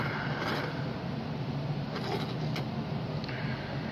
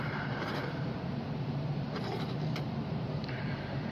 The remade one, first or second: second